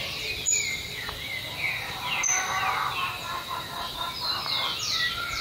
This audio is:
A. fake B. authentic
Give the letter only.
B